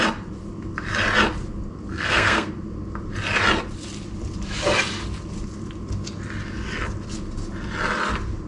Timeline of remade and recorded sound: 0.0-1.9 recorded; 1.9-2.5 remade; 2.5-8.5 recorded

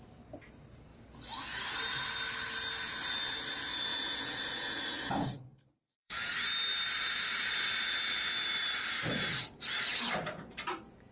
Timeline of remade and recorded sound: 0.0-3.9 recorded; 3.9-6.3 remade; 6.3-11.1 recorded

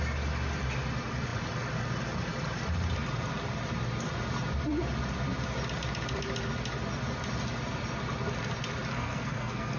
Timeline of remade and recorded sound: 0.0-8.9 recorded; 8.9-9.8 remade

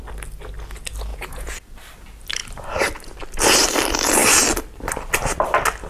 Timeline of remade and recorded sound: 0.0-1.1 recorded; 1.1-1.6 remade; 1.6-5.9 recorded

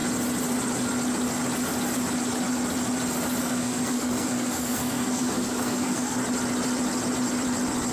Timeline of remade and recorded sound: 0.0-3.4 recorded; 3.4-6.2 remade; 6.2-7.9 recorded

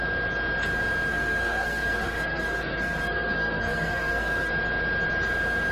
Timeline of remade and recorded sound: 0.0-1.1 recorded; 1.1-4.5 remade; 4.5-5.7 recorded